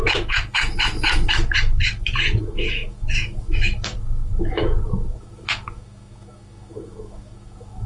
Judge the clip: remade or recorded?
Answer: remade